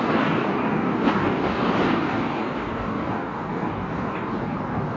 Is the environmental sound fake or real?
fake